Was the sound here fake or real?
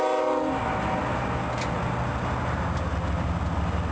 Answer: real